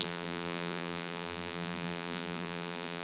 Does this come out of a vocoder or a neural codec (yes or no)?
yes